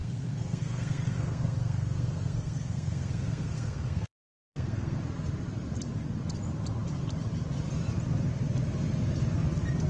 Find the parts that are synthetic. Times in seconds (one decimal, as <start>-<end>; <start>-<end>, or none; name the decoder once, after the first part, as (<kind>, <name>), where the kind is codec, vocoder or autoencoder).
0.0-5.0 (codec, SNAC)